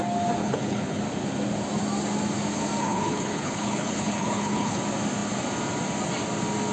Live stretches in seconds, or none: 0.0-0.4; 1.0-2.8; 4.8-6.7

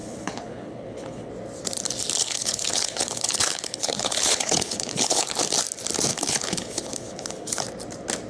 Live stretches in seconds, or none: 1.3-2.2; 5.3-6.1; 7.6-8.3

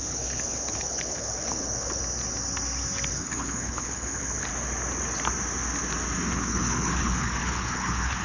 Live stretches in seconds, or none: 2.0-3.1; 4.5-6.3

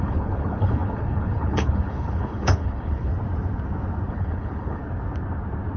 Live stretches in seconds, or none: 3.1-4.1; 4.8-5.8

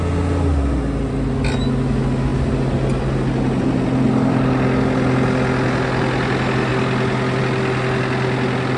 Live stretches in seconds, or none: 0.0-8.8